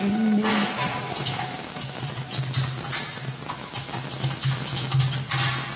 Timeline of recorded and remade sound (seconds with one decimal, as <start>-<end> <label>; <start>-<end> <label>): 0.0-0.5 recorded; 0.5-2.0 remade; 2.0-3.6 recorded; 3.6-5.0 remade; 5.0-5.8 recorded